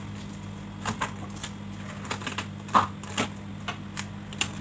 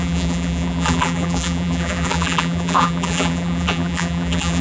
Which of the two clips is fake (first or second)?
second